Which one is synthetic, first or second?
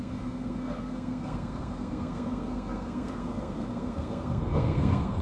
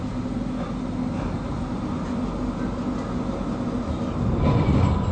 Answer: first